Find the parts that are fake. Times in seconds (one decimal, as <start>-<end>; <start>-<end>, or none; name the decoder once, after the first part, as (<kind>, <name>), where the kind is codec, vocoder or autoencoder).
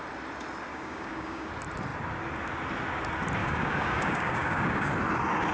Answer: 0.7-1.5 (codec, DAC); 3.4-4.9